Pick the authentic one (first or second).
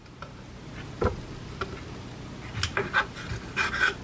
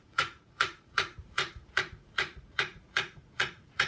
first